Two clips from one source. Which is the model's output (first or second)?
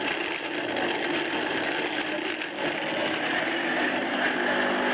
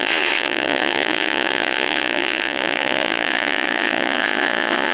second